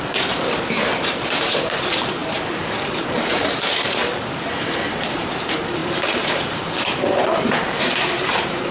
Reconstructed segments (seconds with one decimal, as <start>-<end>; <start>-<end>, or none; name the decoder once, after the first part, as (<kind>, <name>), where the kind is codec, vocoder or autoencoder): 0.0-4.0 (vocoder, BigVGAN v2); 4.9-8.7